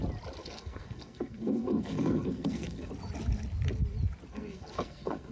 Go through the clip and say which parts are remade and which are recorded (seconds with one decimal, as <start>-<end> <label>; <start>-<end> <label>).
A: 0.0-0.4 recorded; 0.4-2.9 remade; 2.9-4.3 recorded; 4.3-5.3 remade